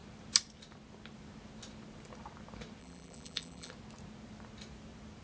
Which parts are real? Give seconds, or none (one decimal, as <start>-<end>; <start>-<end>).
0.0-2.8; 3.7-5.2

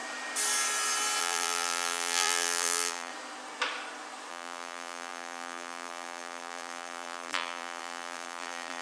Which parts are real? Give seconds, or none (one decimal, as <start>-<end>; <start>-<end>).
0.0-1.2; 3.1-4.3

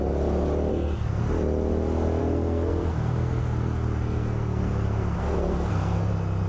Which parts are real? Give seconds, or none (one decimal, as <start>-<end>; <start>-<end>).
0.0-0.7; 1.2-2.2; 6.1-6.5

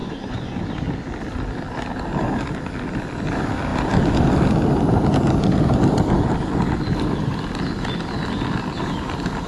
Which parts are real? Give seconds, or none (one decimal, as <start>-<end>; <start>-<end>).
0.6-9.5

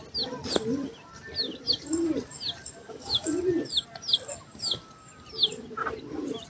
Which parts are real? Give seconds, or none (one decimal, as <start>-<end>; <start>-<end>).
0.0-2.8; 3.3-6.5

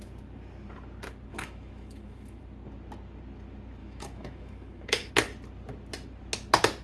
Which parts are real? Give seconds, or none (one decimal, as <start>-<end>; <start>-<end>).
0.0-1.3; 2.4-3.8; 5.1-6.8

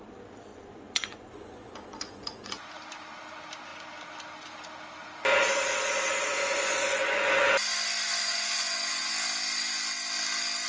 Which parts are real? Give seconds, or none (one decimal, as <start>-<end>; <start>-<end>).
0.0-0.5; 2.7-6.4; 7.5-8.2; 9.1-10.7

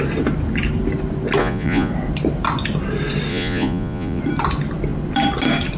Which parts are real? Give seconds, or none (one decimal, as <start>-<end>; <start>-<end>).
0.0-1.4; 1.9-3.3; 4.2-5.8